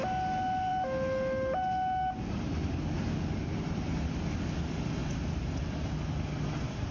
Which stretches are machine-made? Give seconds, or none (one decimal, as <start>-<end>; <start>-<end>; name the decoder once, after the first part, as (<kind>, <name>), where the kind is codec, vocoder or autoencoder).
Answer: none